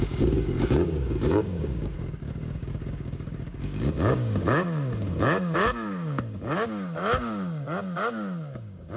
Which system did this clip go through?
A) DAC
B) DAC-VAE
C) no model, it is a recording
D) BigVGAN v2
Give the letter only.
A